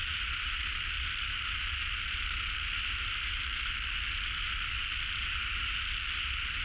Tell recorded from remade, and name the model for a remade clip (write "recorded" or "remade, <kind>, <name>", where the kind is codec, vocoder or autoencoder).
recorded